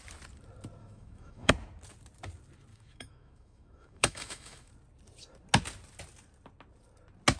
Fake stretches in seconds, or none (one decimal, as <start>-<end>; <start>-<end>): 0.8-1.5; 2.7-4.7